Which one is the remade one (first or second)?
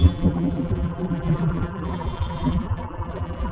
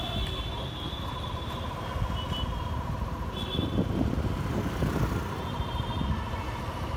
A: first